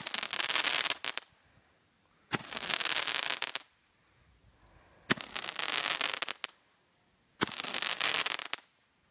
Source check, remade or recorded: recorded